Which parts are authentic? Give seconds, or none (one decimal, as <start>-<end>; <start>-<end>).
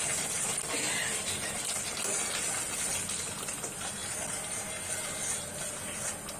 0.0-6.4